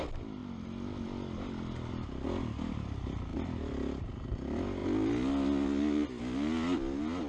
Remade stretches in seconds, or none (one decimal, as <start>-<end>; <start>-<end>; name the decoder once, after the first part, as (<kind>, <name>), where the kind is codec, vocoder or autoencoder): none